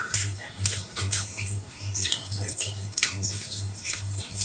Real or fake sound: fake